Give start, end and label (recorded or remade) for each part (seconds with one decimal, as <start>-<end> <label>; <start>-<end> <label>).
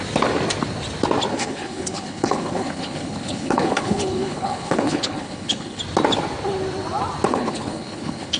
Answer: 0.0-1.3 recorded; 1.3-5.8 remade; 5.8-7.3 recorded; 7.3-8.4 remade